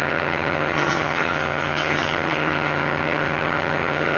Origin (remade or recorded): remade